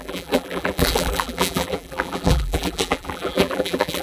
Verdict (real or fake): fake